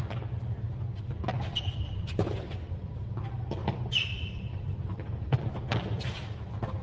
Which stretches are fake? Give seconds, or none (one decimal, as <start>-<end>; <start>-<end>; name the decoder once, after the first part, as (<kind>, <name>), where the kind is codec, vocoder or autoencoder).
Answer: 1.5-2.9 (vocoder, BigVGAN v2); 3.6-5.4